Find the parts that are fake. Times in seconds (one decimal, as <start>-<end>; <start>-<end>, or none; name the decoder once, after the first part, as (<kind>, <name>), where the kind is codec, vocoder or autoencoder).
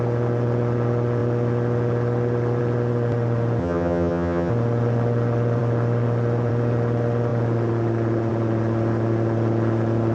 3.6-4.5 (vocoder, HiFi-GAN)